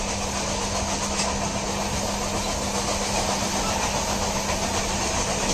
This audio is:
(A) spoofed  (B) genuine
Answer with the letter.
B